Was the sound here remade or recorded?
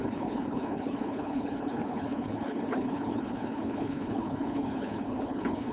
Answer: remade